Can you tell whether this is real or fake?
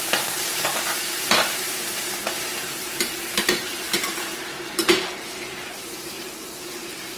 fake